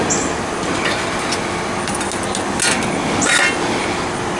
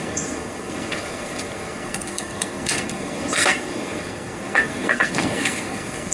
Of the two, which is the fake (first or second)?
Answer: second